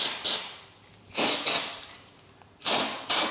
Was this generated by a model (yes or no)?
yes